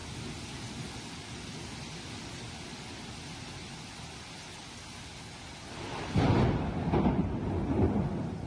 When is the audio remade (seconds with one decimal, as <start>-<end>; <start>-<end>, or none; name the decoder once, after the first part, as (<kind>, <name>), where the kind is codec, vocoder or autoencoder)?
none